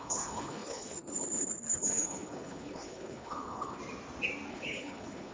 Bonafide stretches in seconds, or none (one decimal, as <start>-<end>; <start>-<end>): 3.8-4.5